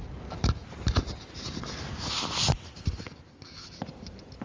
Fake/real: real